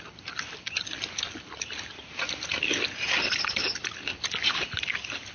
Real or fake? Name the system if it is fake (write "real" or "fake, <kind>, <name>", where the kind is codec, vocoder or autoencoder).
real